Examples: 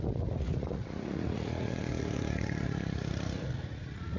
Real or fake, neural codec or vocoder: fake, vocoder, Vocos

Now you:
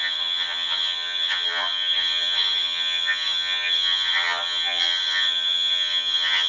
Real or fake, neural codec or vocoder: fake, vocoder, HiFi-GAN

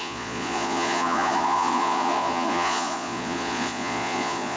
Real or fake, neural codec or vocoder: fake, vocoder, Vocos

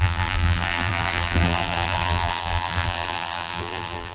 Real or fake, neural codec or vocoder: fake, vocoder, BigVGAN v2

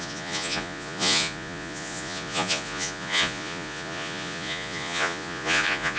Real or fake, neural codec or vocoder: fake, vocoder, Vocos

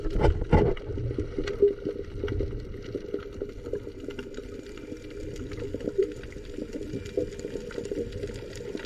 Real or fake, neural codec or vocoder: real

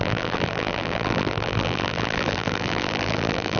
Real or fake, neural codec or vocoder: fake, vocoder, BigVGAN v2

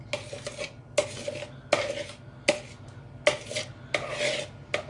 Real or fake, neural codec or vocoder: real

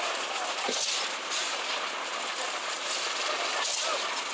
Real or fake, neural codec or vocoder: real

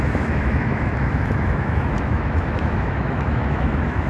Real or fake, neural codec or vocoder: fake, autoencoder, DAC-VAE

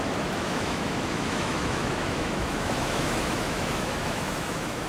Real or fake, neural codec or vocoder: fake, autoencoder, DAC-VAE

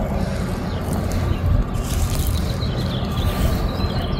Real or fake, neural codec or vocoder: real